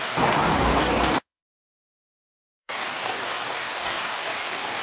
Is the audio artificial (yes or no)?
yes